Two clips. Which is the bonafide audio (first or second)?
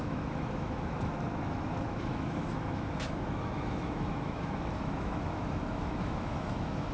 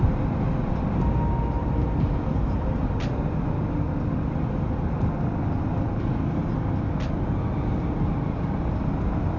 second